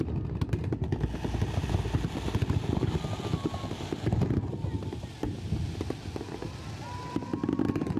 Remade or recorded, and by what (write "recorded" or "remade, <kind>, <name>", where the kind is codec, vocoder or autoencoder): recorded